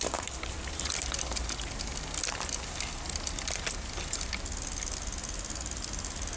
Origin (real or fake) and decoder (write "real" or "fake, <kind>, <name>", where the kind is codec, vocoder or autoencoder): real